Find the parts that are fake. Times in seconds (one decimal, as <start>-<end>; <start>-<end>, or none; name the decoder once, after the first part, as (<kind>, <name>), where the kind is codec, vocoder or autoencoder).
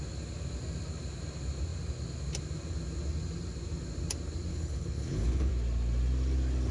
4.5-5.5 (codec, HILCodec)